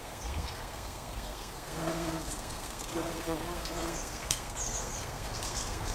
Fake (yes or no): yes